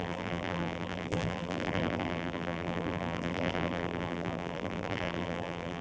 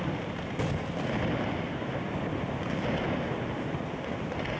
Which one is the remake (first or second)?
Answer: first